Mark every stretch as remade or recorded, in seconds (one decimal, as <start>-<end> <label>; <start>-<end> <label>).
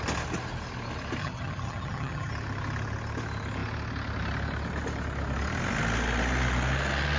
0.0-1.2 recorded; 1.2-2.3 remade; 2.3-7.2 recorded